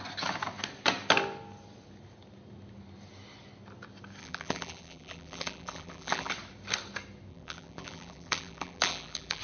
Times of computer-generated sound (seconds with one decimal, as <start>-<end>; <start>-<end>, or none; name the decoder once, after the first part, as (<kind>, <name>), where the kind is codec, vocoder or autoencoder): 4.2-6.3 (vocoder, BigVGAN v2); 7.3-9.4